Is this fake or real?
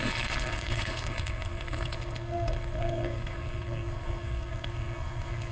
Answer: fake